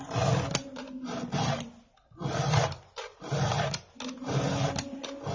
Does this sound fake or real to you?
real